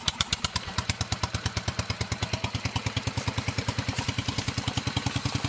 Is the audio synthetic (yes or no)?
yes